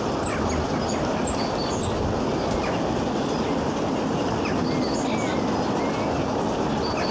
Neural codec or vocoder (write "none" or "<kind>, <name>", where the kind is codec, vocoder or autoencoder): none